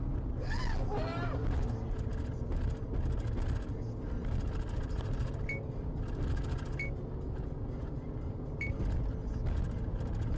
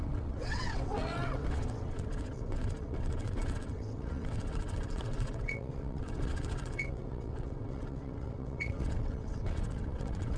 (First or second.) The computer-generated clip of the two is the second